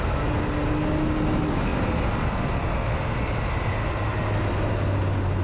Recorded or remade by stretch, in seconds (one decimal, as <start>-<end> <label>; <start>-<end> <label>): 0.0-5.4 recorded